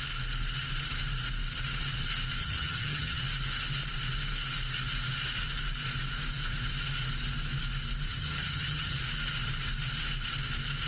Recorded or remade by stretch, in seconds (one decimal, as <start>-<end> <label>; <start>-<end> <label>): 0.0-2.4 recorded; 2.4-3.2 remade; 3.2-8.1 recorded; 8.1-9.0 remade; 9.0-10.9 recorded